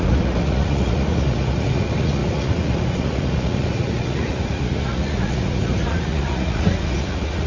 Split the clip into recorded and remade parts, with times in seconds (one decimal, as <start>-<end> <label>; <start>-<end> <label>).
0.0-7.5 remade